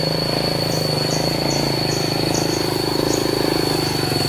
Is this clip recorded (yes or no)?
no